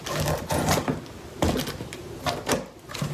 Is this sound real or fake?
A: real